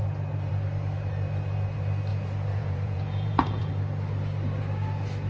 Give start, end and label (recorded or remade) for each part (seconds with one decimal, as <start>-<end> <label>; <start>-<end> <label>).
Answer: 0.0-2.1 recorded; 2.1-3.7 remade; 3.7-5.3 recorded

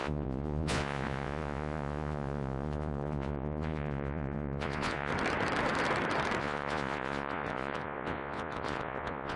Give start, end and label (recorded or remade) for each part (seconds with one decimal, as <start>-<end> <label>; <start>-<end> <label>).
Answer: 0.0-5.1 remade; 5.1-6.4 recorded; 6.4-9.4 remade